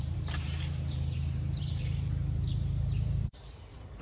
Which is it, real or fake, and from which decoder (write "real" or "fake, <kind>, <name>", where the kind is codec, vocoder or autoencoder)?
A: fake, vocoder, BigVGAN v2